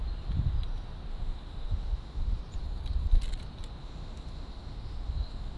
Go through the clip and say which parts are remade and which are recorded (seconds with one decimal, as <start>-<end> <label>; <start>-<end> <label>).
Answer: 0.0-1.1 recorded; 1.1-2.4 remade; 2.4-3.8 recorded; 3.8-5.6 remade